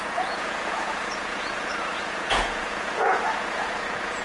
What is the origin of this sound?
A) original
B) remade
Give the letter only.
B